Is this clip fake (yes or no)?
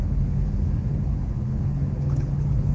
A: yes